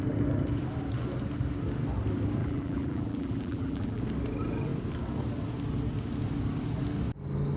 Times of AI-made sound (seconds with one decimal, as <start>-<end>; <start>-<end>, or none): 2.4-4.0